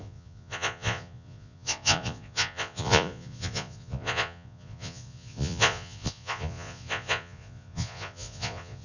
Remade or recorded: remade